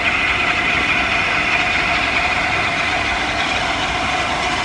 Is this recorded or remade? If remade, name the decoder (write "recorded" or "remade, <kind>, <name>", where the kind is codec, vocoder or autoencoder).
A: recorded